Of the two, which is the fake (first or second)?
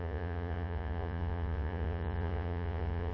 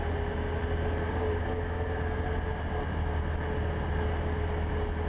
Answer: first